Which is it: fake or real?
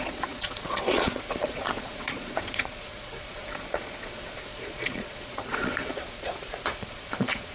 fake